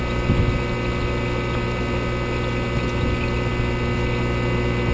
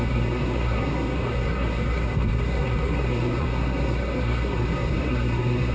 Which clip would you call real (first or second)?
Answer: first